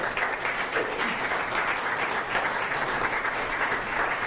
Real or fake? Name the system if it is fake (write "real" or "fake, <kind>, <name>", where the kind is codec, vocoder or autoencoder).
real